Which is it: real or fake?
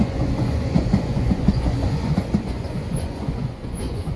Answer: fake